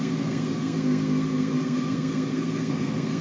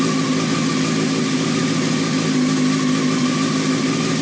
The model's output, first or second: first